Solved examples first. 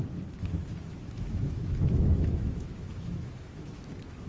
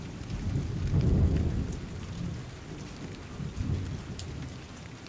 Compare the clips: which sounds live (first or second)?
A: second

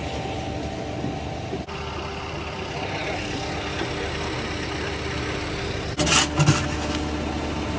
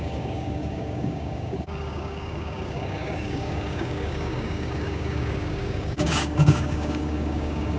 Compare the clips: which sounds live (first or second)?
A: first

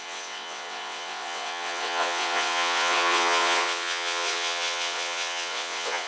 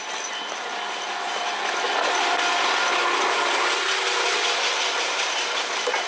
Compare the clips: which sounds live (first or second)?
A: second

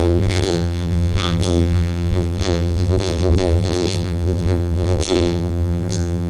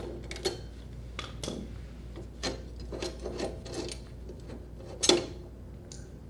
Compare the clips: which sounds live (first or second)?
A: second